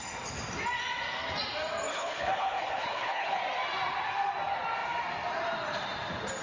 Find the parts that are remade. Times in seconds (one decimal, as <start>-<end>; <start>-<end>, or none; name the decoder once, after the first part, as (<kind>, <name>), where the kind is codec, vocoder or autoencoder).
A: 1.9-3.4 (codec, HILCodec)